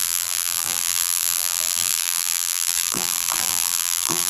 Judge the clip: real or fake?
fake